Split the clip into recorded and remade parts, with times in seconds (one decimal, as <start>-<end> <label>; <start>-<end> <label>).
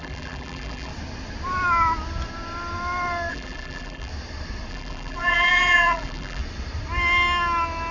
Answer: 0.0-0.9 remade; 0.9-3.3 recorded; 3.3-4.1 remade; 4.1-4.7 recorded; 4.7-6.4 remade; 6.4-7.9 recorded